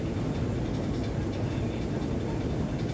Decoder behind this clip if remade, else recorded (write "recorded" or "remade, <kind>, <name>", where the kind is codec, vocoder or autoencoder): recorded